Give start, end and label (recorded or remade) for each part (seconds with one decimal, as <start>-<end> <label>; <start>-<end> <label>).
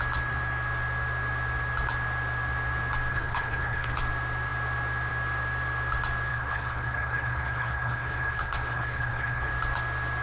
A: 0.0-3.1 recorded; 3.1-4.0 remade; 4.0-6.3 recorded; 6.3-9.5 remade; 9.5-10.2 recorded